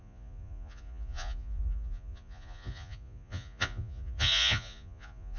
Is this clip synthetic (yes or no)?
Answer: yes